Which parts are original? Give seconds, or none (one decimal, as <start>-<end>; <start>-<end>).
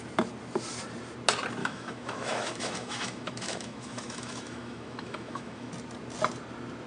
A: 0.0-1.6; 5.7-6.9